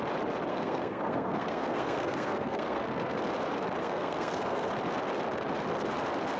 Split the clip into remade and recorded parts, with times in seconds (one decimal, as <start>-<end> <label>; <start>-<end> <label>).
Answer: 0.0-0.5 recorded; 0.5-3.2 remade; 3.2-3.8 recorded; 3.8-4.7 remade; 4.7-6.4 recorded